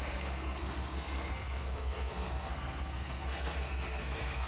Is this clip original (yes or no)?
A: no